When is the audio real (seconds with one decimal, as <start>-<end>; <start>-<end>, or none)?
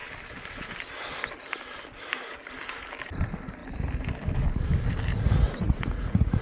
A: 0.0-5.1